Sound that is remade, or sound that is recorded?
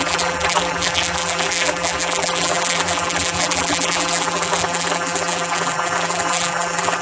remade